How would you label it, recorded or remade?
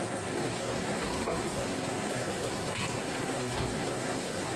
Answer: remade